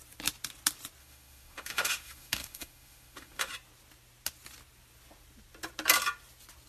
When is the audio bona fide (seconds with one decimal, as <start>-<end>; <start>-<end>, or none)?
0.0-1.0; 3.5-6.7